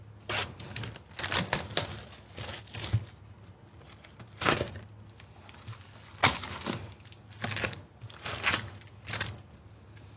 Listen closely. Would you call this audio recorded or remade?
recorded